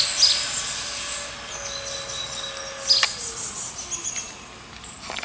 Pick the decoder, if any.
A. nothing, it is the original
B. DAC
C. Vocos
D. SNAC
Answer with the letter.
A